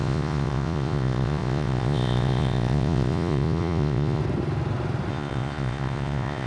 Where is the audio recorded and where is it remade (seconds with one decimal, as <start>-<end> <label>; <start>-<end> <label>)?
0.0-4.2 remade; 4.2-5.1 recorded; 5.1-6.5 remade